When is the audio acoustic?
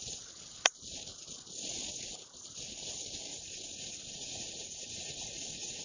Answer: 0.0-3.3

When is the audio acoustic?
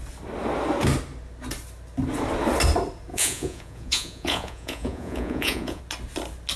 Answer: 0.0-3.1; 5.8-6.6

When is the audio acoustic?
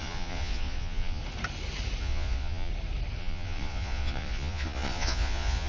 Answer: 1.2-2.0; 2.7-3.2